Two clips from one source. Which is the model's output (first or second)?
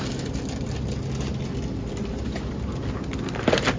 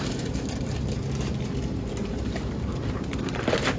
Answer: second